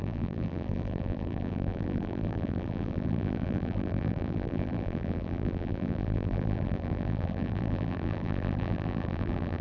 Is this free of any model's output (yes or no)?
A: no